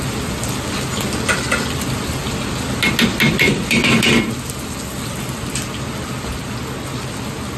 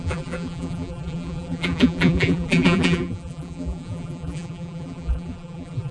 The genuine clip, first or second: first